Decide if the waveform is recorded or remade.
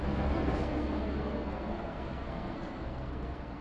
remade